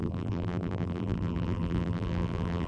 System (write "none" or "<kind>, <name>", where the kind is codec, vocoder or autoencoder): vocoder, BigVGAN v2